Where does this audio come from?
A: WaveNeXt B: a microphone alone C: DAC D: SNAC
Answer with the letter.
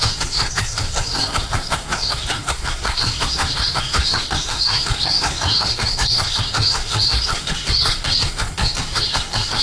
D